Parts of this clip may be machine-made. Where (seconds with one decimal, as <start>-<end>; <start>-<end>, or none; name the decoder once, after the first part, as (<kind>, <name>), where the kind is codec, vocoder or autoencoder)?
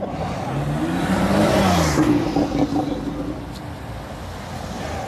1.0-1.6 (vocoder, BigVGAN v2)